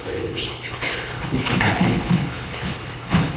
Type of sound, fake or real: fake